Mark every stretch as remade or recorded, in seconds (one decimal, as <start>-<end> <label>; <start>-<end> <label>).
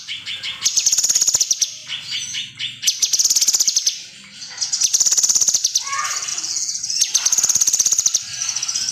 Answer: 0.0-6.3 recorded; 6.3-6.8 remade; 6.8-8.9 recorded